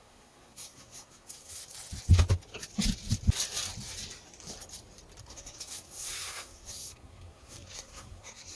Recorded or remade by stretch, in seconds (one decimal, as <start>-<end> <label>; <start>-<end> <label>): 0.0-1.6 remade; 1.6-5.2 recorded; 5.2-8.6 remade

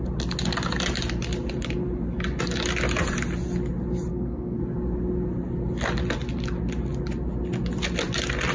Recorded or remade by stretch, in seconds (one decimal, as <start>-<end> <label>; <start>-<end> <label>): 0.0-4.1 recorded; 4.1-4.6 remade; 4.6-8.5 recorded